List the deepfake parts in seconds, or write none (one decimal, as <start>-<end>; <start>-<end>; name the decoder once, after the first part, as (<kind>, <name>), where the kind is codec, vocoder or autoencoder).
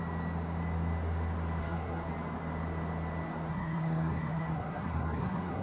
1.6-2.1 (codec, SNAC); 3.5-5.6